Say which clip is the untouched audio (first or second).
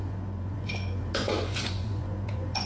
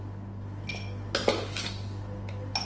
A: second